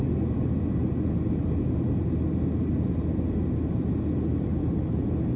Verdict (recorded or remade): recorded